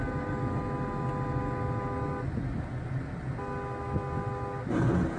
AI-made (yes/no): no